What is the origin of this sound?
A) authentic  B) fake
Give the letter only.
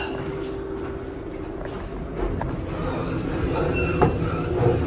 A